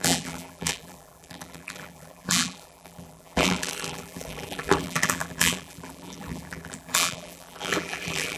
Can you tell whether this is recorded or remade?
remade